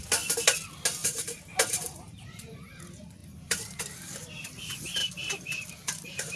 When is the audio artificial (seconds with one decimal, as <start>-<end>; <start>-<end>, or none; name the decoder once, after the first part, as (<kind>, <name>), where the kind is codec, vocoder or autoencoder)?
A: 1.0-2.8 (vocoder, BigVGAN v2); 3.2-3.8; 5.0-6.4